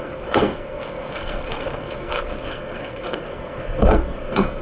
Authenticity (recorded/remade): remade